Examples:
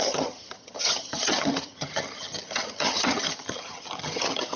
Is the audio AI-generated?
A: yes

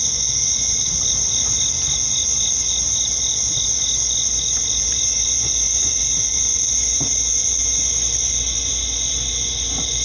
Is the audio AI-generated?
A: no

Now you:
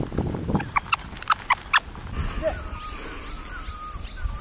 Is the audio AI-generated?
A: no